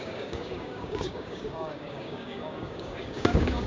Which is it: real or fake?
fake